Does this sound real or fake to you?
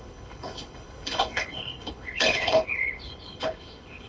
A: fake